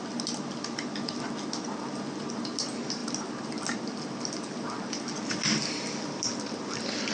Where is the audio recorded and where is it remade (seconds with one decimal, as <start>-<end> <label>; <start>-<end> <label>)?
0.0-7.1 recorded